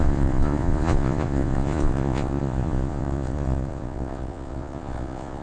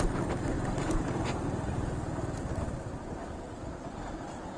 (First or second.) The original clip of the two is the second